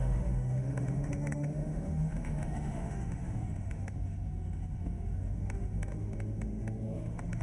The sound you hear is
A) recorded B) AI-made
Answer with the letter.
B